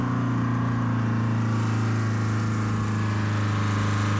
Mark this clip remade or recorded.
recorded